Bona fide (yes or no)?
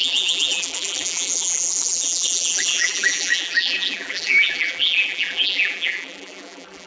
no